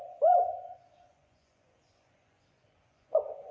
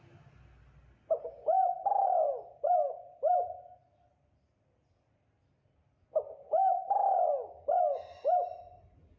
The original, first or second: second